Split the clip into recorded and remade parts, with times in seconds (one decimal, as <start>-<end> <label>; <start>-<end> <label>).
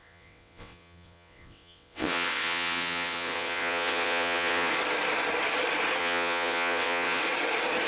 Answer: 0.0-4.7 remade; 4.7-6.0 recorded; 6.0-7.2 remade; 7.2-7.9 recorded